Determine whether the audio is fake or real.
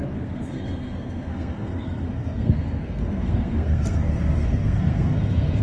fake